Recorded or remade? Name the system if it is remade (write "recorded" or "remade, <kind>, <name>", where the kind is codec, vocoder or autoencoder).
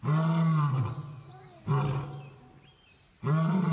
recorded